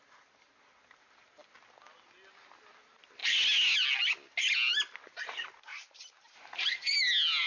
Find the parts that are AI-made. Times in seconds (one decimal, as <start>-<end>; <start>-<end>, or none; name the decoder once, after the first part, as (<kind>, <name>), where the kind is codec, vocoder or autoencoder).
5.7-7.0 (vocoder, BigVGAN v2)